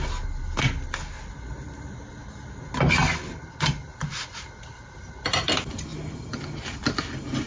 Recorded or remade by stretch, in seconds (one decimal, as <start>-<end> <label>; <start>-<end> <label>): 0.0-7.5 recorded